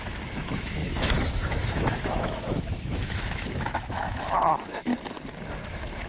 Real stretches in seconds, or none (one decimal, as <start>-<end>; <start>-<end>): 4.9-6.1